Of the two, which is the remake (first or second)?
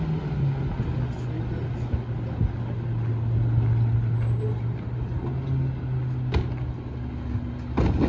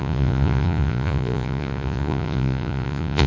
second